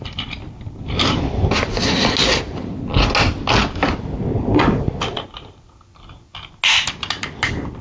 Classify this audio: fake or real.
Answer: real